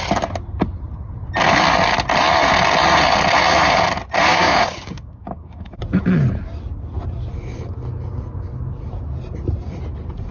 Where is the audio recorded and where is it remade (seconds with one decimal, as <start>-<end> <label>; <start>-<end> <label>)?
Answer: 0.0-4.3 recorded; 4.3-5.8 remade; 5.8-10.3 recorded

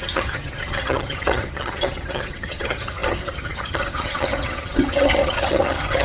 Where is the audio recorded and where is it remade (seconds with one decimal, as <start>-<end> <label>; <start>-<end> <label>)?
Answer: 0.0-6.0 remade